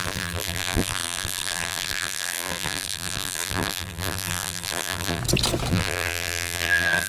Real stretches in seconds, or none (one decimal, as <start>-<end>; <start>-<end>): 5.2-5.7